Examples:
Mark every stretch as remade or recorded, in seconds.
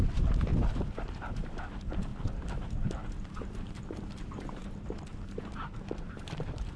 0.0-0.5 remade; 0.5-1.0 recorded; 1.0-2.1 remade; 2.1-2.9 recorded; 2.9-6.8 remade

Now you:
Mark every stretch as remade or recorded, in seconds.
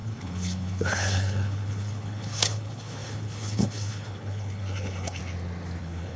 0.0-5.2 remade; 5.2-5.8 recorded; 5.8-6.2 remade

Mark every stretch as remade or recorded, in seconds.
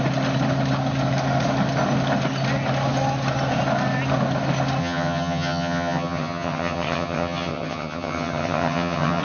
0.0-4.8 recorded; 4.8-9.2 remade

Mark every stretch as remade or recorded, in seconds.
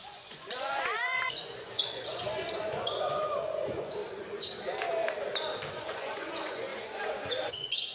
0.0-4.0 remade; 4.0-5.7 recorded; 5.7-7.9 remade